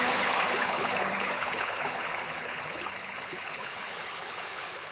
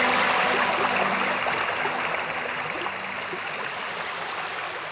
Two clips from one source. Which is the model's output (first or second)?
first